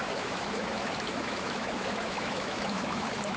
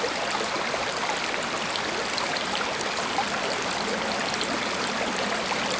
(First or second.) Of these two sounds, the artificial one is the first